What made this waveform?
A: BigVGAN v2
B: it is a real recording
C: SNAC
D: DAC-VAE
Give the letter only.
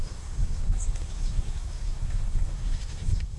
C